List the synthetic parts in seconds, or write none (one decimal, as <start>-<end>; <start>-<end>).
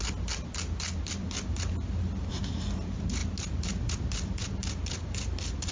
none